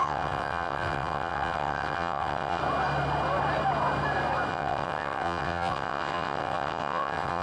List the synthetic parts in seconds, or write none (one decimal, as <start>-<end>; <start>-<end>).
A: 0.0-2.6; 4.5-7.4